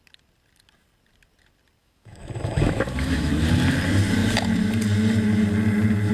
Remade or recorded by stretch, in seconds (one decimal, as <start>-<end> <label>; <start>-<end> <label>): 0.0-1.8 recorded; 1.8-3.3 remade; 3.3-6.1 recorded